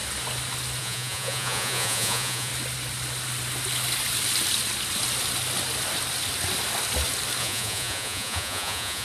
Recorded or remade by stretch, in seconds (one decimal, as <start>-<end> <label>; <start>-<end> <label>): 0.0-0.8 recorded; 0.8-2.5 remade; 2.5-7.4 recorded; 7.4-9.0 remade